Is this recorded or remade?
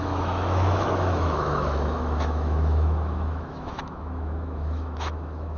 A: remade